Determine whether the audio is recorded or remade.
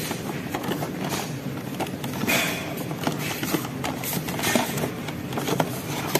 recorded